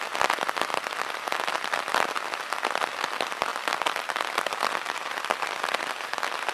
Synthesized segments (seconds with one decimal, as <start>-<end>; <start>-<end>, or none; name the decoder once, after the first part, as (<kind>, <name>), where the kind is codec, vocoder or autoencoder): none